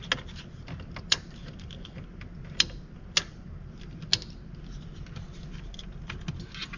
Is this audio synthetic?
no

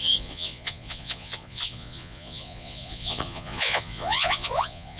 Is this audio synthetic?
yes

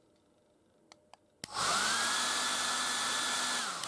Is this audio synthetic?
no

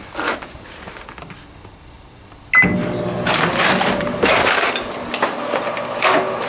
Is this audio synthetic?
no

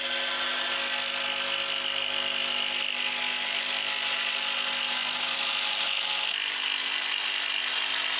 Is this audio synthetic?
no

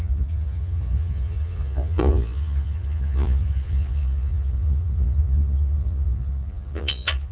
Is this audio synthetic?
yes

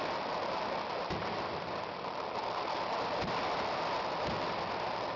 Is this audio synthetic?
no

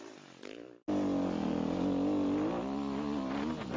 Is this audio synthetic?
no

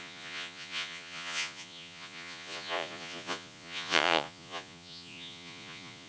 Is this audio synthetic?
yes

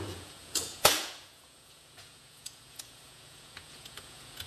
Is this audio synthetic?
yes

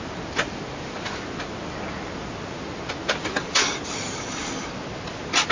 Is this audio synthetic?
no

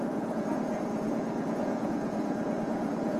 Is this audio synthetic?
yes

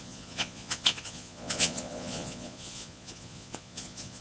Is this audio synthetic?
yes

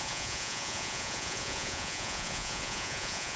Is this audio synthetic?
yes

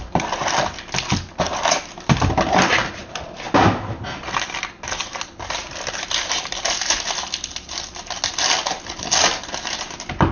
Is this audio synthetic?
no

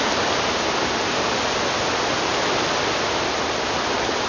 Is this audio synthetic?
no